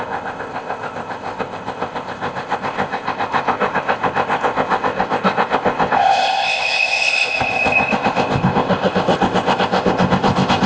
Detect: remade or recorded remade